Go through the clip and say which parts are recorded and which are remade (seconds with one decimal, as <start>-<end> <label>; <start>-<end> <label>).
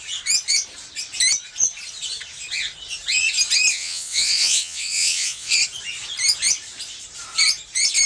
0.0-3.7 recorded; 3.7-5.5 remade; 5.5-8.1 recorded